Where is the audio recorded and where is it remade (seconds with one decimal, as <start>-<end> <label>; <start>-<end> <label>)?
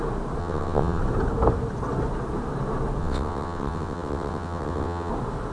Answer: 0.0-0.4 recorded; 0.4-1.0 remade; 1.0-3.0 recorded; 3.0-5.1 remade; 5.1-5.5 recorded